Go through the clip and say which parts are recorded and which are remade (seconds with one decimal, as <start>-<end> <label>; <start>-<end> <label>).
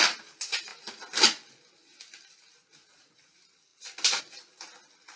0.0-5.2 recorded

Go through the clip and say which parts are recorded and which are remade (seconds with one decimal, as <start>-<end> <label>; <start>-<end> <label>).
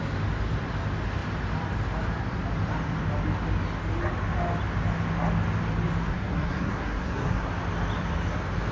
0.0-6.1 recorded; 6.1-7.5 remade; 7.5-8.7 recorded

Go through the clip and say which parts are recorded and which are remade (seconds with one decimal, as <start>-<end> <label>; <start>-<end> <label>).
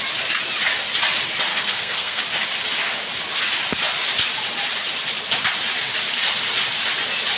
0.0-1.5 recorded; 1.5-2.2 remade; 2.2-7.4 recorded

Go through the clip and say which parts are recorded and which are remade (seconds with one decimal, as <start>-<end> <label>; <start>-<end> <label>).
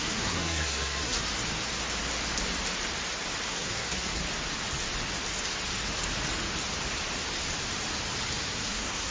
0.0-1.3 remade; 1.3-3.5 recorded; 3.5-4.2 remade; 4.2-8.4 recorded; 8.4-9.1 remade